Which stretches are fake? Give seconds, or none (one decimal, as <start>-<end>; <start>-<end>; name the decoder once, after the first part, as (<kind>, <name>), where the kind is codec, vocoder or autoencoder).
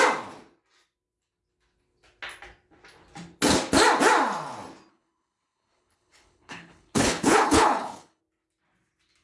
4.9-8.2 (codec, HILCodec)